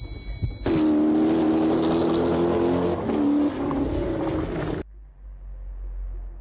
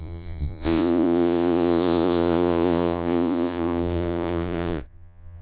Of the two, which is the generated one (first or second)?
second